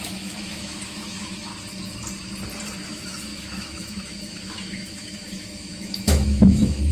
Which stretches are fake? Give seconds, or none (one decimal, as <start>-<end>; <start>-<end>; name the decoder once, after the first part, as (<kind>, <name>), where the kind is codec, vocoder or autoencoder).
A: 0.0-1.5 (autoencoder, DAC-VAE); 2.9-6.9